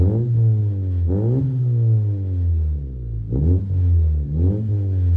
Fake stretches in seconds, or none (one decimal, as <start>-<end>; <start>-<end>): none